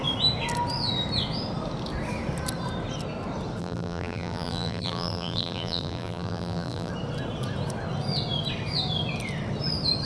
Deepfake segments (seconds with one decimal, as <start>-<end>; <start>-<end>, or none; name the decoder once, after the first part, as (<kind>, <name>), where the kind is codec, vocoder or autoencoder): 3.6-6.9 (vocoder, BigVGAN v2)